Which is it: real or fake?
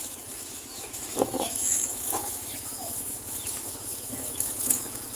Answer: fake